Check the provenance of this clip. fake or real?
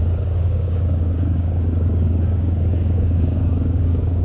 fake